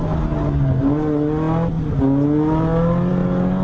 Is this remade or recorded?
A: recorded